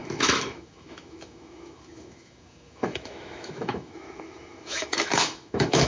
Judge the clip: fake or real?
fake